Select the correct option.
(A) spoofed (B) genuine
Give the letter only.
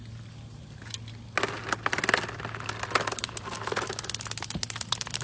B